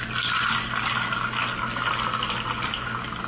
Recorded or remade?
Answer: recorded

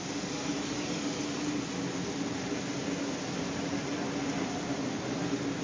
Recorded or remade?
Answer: recorded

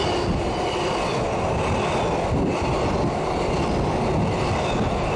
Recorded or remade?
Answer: recorded